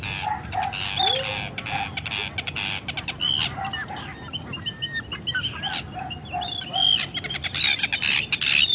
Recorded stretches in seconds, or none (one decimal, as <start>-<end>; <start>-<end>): 0.0-8.7